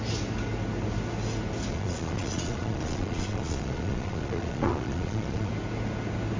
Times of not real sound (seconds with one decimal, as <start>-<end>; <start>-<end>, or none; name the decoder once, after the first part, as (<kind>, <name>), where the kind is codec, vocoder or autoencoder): 1.7-5.5 (vocoder, Vocos)